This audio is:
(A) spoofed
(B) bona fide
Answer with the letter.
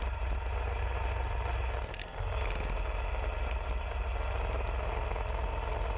B